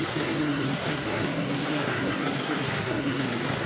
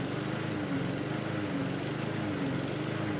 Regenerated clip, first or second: first